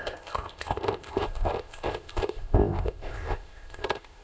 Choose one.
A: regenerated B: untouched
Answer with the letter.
A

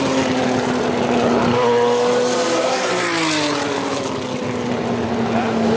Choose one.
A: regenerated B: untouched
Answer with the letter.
B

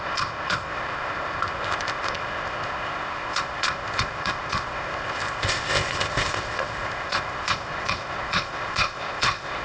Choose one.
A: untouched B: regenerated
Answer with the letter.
B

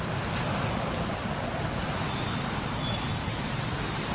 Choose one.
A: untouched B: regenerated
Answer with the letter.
A